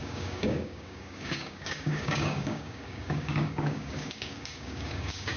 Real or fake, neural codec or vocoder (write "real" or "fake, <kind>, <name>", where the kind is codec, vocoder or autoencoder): fake, codec, DAC